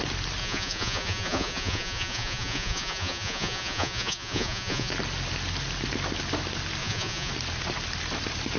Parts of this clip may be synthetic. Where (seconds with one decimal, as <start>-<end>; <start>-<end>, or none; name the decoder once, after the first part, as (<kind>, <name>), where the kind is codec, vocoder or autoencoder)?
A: 0.4-4.9 (vocoder, Vocos); 6.8-7.3